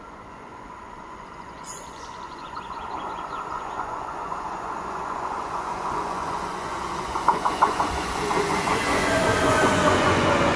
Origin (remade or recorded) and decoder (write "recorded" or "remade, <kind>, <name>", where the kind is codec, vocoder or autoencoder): remade, vocoder, Vocos